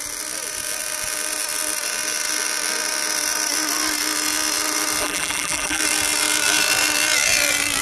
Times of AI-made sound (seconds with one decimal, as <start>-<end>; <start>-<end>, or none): 5.0-5.8